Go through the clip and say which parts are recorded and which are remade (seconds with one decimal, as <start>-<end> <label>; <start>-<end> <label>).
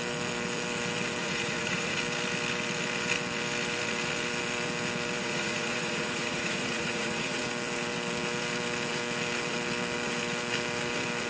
0.0-1.2 recorded; 1.2-2.0 remade; 2.0-5.2 recorded; 5.2-7.4 remade; 7.4-11.3 recorded